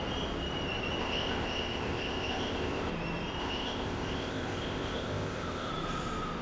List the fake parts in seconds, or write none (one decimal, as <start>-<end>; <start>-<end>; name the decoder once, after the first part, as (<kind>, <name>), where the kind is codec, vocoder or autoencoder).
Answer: 1.0-2.9 (codec, ZipCodec); 3.4-5.7